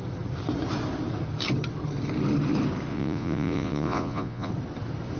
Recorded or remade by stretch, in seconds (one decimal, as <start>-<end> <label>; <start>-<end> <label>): 0.0-2.9 recorded; 2.9-4.5 remade; 4.5-5.2 recorded